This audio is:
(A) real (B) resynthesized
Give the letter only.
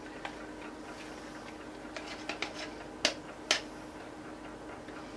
A